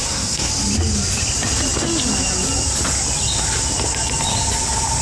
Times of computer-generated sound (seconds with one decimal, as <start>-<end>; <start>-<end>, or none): 0.0-0.5